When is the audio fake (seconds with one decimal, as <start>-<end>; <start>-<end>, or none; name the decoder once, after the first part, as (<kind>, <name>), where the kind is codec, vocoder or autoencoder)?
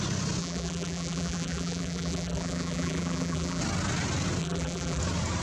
0.4-3.6 (vocoder, BigVGAN v2); 4.4-5.0